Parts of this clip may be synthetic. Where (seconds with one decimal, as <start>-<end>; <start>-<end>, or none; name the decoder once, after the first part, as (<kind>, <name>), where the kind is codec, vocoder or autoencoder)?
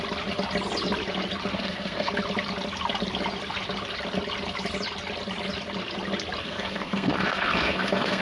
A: 1.5-2.1 (codec, SNAC); 6.4-8.2